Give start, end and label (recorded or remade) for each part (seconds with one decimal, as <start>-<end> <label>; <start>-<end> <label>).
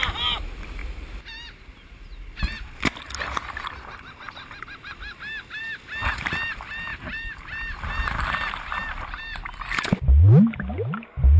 0.0-11.4 recorded